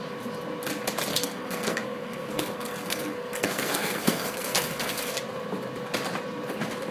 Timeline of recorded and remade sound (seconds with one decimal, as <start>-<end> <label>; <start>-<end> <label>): 0.0-1.1 recorded; 1.1-5.2 remade; 5.2-6.9 recorded